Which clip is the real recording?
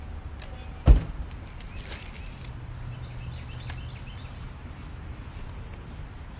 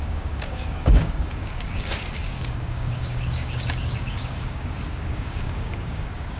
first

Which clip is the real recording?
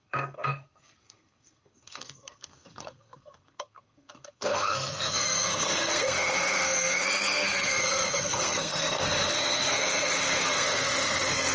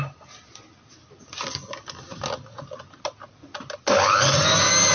second